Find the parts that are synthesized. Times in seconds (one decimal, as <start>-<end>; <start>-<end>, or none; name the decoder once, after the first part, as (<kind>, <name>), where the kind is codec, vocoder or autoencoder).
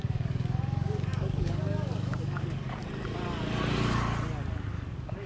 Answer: 0.0-2.8 (codec, DAC); 4.7-5.3